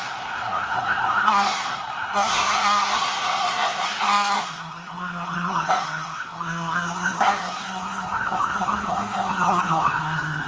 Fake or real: fake